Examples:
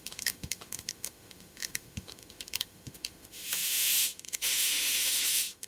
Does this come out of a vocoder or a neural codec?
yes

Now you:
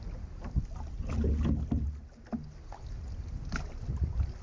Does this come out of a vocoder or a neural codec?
no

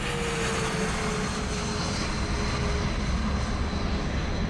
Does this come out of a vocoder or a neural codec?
no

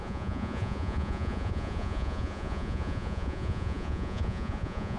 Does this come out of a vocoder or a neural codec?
yes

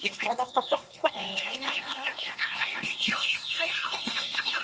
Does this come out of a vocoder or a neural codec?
yes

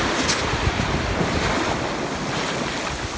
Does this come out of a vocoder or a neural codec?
no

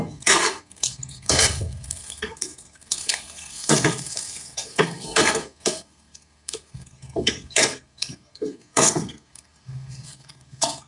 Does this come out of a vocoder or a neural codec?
yes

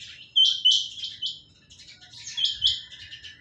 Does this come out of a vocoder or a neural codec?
no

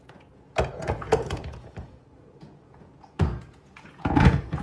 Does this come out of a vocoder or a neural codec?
yes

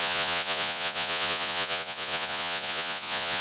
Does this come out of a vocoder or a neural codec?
yes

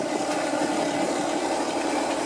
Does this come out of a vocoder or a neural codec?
no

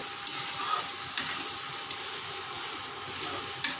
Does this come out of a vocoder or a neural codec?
no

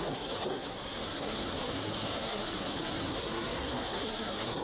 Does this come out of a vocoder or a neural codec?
yes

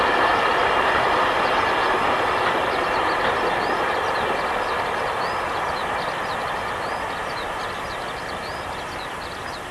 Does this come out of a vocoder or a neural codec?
no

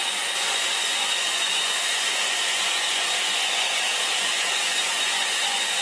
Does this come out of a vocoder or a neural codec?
yes